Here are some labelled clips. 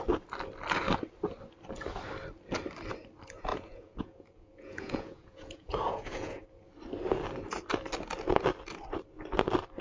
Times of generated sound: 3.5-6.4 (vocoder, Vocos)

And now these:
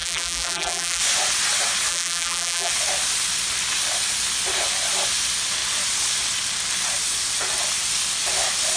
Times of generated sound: 0.0-1.0 (vocoder, BigVGAN v2); 1.9-2.7

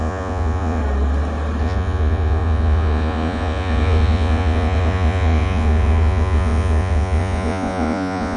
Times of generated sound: 0.0-0.8 (vocoder, Vocos); 1.6-8.4

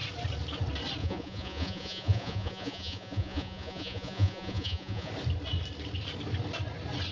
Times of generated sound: 1.0-5.1 (vocoder, Vocos)

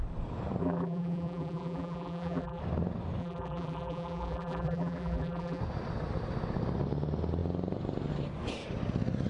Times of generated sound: 0.6-2.6 (vocoder, BigVGAN v2); 3.2-5.6